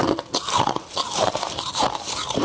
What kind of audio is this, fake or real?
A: real